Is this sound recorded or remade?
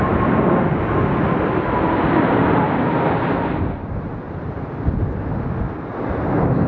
recorded